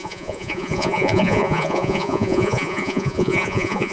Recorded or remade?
remade